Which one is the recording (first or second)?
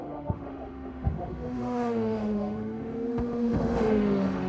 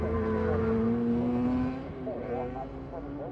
second